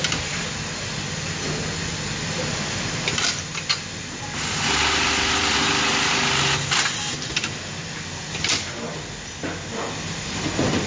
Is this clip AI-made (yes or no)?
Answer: no